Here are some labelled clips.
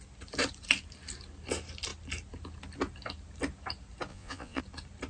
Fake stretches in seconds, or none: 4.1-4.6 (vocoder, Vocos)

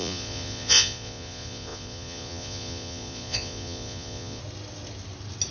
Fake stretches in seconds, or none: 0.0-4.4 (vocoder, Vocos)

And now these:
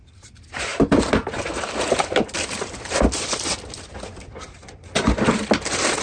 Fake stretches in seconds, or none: none

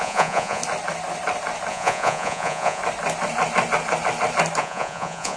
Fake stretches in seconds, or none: 0.0-0.6 (vocoder, Vocos); 1.7-2.8; 4.6-5.4

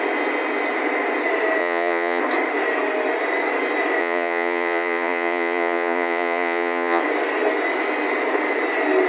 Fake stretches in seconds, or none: 1.6-2.2 (vocoder, Vocos); 4.0-7.0

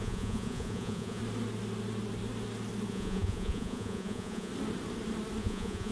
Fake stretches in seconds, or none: 0.0-1.2 (vocoder, Vocos); 2.9-4.5; 5.4-5.9